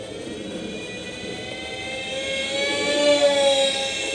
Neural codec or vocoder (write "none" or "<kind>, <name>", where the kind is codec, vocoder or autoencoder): none